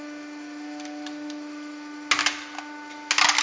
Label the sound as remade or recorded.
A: recorded